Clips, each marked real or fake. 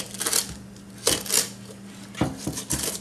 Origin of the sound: real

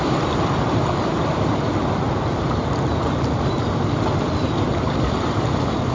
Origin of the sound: real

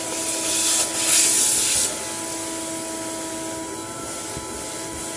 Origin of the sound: real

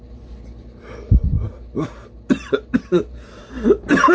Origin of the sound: fake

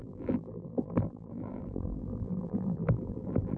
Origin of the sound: fake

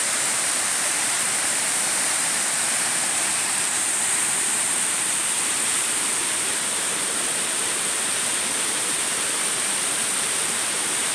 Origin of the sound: fake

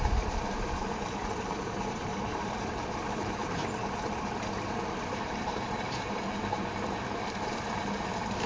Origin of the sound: fake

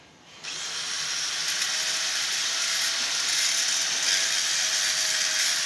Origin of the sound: real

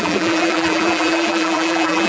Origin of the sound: fake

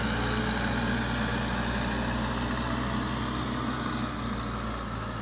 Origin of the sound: real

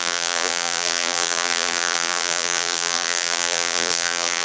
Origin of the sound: fake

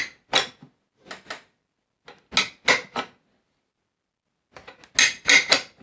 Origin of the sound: real